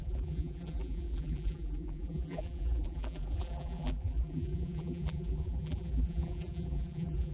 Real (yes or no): no